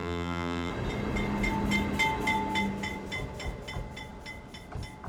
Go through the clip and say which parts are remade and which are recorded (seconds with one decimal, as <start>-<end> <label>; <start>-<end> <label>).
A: 0.0-0.7 remade; 0.7-5.1 recorded

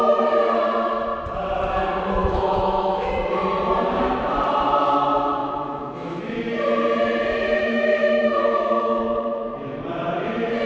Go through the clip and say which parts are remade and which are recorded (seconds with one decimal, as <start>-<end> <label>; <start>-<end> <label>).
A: 0.0-2.2 recorded; 2.2-3.1 remade; 3.1-5.4 recorded; 5.4-6.2 remade; 6.2-7.6 recorded; 7.6-9.8 remade; 9.8-10.7 recorded

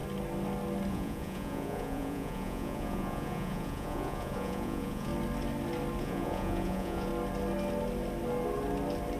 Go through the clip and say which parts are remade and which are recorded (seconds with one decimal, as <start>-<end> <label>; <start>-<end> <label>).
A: 0.0-0.9 recorded; 0.9-5.1 remade; 5.1-6.0 recorded; 6.0-7.1 remade; 7.1-9.2 recorded

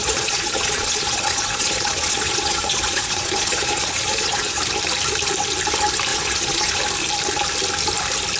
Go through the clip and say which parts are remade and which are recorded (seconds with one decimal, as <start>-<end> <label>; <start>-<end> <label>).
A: 0.0-4.6 remade; 4.6-6.1 recorded; 6.1-6.8 remade; 6.8-8.4 recorded

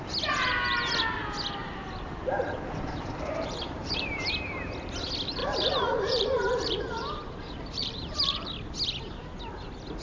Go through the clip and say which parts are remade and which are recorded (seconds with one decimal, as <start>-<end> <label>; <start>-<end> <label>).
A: 0.0-1.6 recorded; 1.6-4.3 remade; 4.3-5.4 recorded; 5.4-8.5 remade; 8.5-10.0 recorded